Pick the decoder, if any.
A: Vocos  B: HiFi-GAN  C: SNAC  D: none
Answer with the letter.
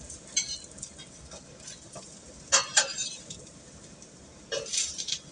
D